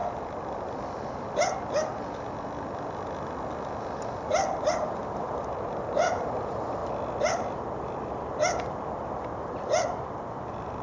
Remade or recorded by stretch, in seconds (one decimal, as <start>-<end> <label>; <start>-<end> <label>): 0.0-10.8 recorded